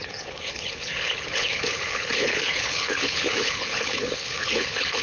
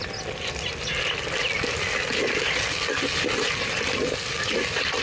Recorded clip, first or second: second